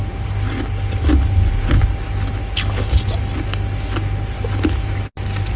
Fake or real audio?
real